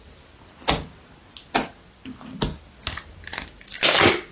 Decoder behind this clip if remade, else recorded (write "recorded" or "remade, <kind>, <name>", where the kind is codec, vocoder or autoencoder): recorded